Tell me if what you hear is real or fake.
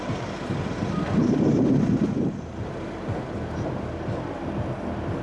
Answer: real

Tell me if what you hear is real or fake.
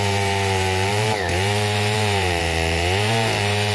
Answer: fake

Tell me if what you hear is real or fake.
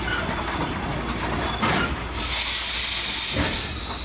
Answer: real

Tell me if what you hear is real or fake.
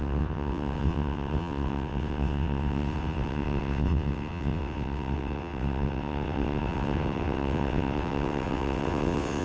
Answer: fake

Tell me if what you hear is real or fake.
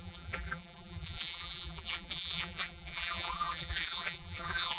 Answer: fake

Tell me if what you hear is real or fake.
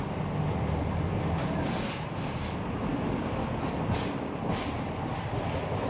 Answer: real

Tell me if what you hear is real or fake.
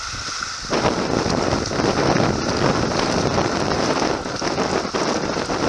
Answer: real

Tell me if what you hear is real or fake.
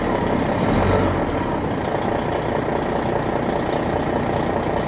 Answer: real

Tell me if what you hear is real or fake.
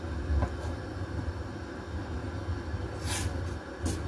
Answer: real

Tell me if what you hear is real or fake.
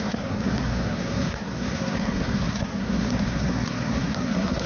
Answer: fake